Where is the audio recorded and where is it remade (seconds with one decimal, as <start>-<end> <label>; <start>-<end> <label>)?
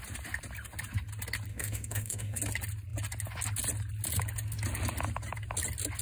0.0-1.5 recorded; 1.5-2.4 remade; 2.4-6.0 recorded